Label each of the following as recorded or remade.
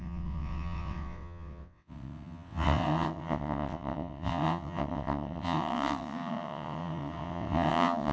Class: remade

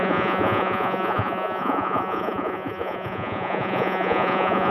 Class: remade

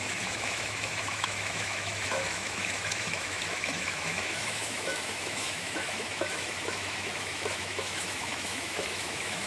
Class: remade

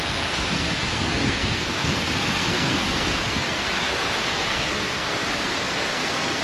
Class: remade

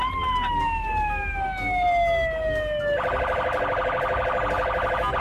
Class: recorded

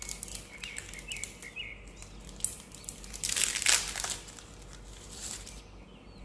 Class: recorded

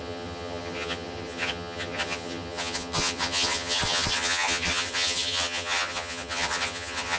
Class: remade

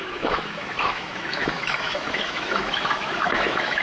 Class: remade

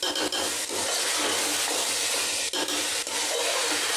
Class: recorded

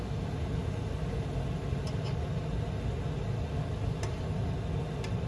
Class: recorded